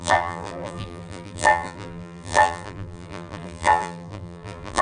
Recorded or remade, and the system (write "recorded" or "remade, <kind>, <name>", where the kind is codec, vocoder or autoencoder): remade, vocoder, BigVGAN v2